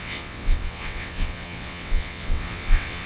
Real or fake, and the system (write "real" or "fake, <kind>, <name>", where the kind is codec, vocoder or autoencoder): fake, vocoder, WaveNeXt